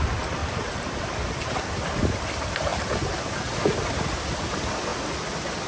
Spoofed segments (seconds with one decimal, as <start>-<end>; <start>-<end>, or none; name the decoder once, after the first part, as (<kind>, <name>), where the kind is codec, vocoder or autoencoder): 0.4-1.6 (vocoder, BigVGAN v2)

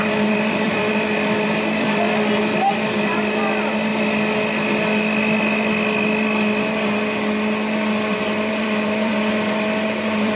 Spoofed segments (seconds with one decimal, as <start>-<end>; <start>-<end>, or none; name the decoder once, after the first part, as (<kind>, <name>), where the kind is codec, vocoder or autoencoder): 0.0-3.9 (vocoder, BigVGAN v2); 8.5-10.4

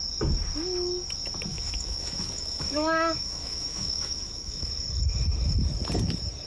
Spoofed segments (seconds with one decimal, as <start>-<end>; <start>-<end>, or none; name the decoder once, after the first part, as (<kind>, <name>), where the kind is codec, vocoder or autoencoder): 1.5-4.7 (autoencoder, DAC-VAE)

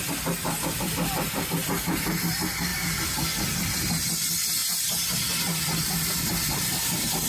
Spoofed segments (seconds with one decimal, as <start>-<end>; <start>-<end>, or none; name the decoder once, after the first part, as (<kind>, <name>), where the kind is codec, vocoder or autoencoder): none

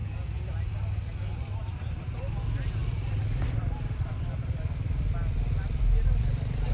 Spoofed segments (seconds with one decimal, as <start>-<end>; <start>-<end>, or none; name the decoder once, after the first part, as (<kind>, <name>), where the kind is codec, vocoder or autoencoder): 1.6-6.7 (vocoder, BigVGAN v2)

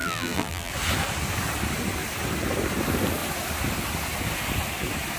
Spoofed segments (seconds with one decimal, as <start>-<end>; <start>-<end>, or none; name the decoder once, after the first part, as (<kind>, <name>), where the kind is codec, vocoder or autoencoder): 0.0-0.7 (vocoder, BigVGAN v2)